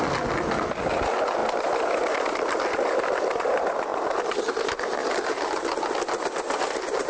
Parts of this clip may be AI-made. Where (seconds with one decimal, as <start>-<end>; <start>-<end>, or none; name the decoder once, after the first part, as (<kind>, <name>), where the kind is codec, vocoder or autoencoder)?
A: none